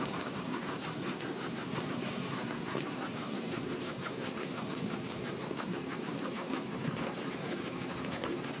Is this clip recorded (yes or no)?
no